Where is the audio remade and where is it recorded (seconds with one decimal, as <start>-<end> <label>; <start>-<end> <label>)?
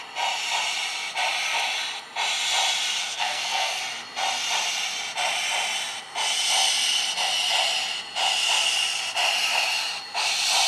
0.0-3.0 recorded; 3.0-3.8 remade; 3.8-10.7 recorded